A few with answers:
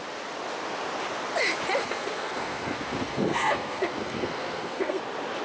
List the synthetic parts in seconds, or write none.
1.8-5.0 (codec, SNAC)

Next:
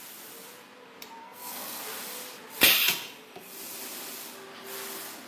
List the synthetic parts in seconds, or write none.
1.2-1.8 (codec, SNAC)

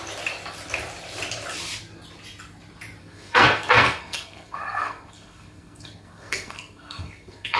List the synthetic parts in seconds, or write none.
3.0-7.6 (codec, SNAC)

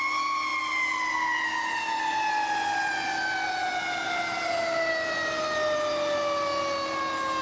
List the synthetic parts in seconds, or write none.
none

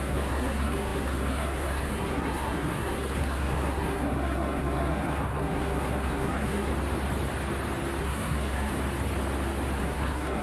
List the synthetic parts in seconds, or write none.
0.0-6.7 (codec, SNAC); 8.0-8.7; 9.8-10.4

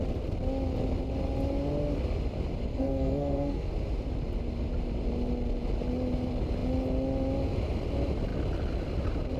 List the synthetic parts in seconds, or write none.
2.7-3.7 (codec, SNAC)